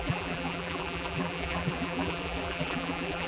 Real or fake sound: fake